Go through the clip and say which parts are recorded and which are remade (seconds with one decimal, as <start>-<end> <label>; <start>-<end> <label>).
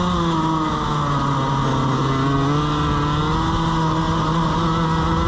0.0-5.3 recorded